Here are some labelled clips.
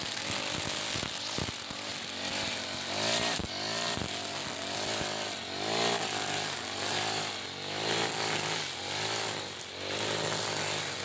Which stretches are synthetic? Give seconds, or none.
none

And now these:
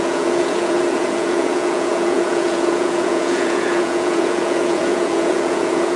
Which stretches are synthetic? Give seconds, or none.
0.0-6.0 (vocoder, Vocos)

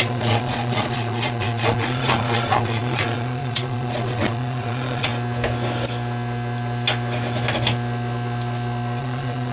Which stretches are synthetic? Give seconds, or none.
0.0-5.1 (vocoder, Vocos); 9.0-9.5

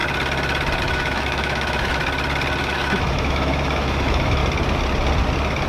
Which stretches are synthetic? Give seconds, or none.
0.8-2.0 (autoencoder, DAC-VAE); 2.6-4.4

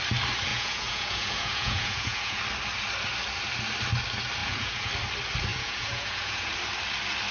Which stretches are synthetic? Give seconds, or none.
0.5-2.4 (vocoder, Vocos); 4.4-4.9; 5.5-6.5

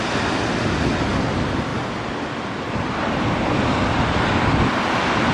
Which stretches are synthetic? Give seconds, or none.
none

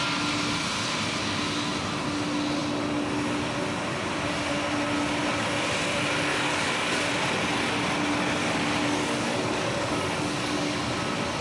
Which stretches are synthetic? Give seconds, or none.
6.3-7.1 (codec, DAC); 8.4-10.8

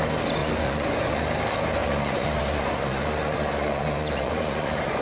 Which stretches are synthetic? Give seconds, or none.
0.4-1.2 (vocoder, Vocos); 1.8-5.0